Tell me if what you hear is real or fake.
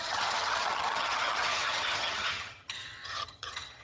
fake